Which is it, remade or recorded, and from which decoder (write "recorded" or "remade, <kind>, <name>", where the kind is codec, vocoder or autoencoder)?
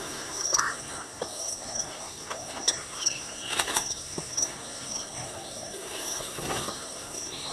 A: remade, codec, SNAC